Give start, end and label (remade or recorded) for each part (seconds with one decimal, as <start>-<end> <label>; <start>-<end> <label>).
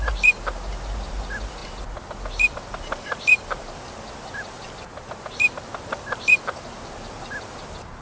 0.0-8.0 recorded